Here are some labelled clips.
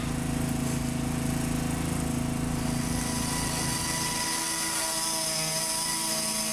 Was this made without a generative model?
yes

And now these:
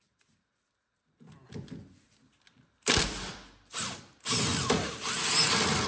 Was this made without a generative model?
yes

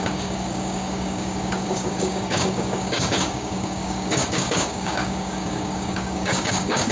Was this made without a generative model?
no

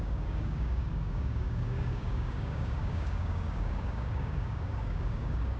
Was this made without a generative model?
no